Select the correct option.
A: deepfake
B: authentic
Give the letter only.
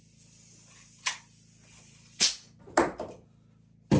B